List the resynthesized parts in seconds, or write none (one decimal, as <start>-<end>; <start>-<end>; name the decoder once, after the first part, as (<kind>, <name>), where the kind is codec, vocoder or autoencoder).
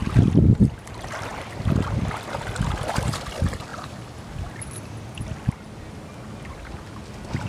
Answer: none